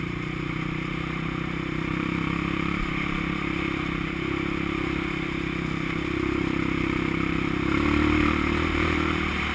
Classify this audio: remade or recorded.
remade